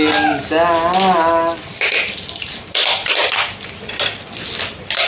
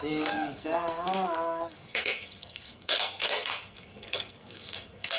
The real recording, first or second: first